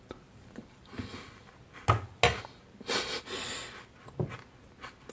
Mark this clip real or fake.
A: real